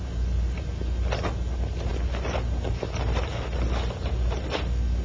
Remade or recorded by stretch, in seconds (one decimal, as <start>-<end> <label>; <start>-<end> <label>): 0.0-5.0 recorded